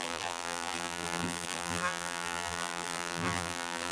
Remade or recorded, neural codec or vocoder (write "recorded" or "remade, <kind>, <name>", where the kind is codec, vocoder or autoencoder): remade, vocoder, BigVGAN v2